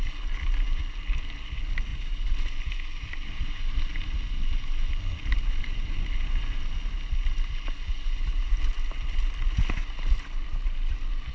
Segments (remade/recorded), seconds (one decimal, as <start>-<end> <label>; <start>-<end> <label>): 0.0-11.3 recorded